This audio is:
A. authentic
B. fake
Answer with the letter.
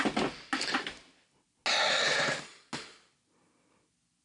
A